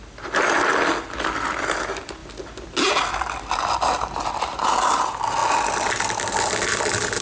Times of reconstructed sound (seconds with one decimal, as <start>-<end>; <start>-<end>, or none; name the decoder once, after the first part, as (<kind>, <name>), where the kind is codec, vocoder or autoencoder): none